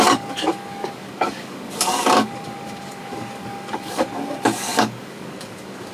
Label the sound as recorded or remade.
remade